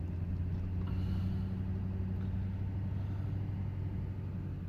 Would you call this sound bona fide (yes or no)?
yes